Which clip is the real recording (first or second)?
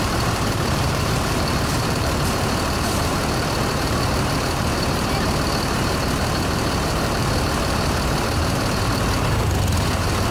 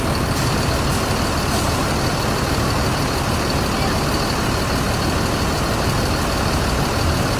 second